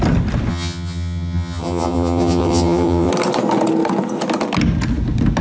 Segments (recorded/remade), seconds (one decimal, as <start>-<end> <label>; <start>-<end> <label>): 0.0-0.5 recorded; 0.5-3.1 remade; 3.1-5.4 recorded